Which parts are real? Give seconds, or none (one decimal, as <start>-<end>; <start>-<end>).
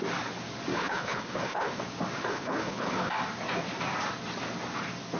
0.0-0.7; 1.8-2.3; 3.1-5.2